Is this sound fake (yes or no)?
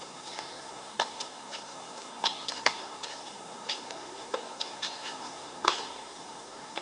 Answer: yes